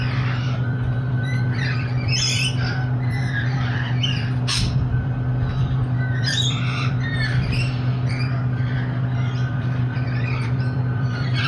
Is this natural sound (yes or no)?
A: no